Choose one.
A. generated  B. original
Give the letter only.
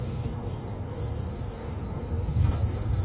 A